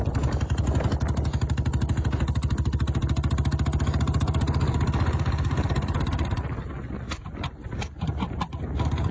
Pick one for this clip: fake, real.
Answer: real